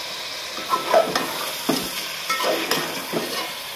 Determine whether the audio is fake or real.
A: real